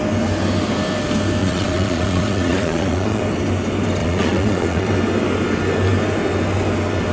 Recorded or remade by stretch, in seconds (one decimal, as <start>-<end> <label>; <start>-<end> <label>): 0.0-1.4 recorded; 1.4-3.2 remade; 3.2-4.0 recorded; 4.0-4.9 remade; 4.9-7.1 recorded